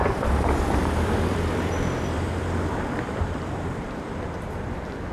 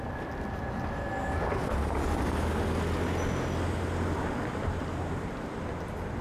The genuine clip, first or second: second